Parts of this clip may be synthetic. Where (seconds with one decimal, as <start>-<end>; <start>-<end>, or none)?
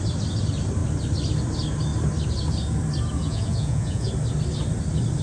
3.2-4.1